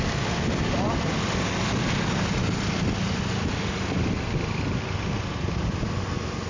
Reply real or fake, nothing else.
real